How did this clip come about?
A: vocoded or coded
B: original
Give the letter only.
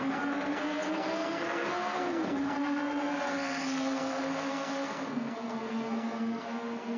A